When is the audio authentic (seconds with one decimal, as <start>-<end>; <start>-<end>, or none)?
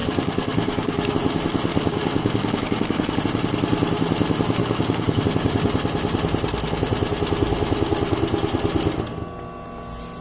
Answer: 1.1-1.7; 3.2-4.6; 5.2-10.2